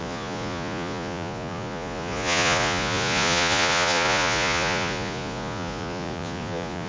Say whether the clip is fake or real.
fake